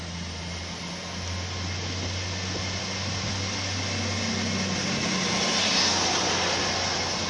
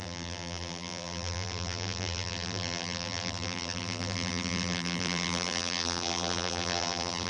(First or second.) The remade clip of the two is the second